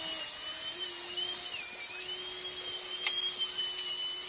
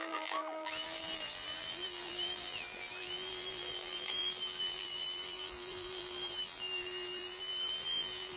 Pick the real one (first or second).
first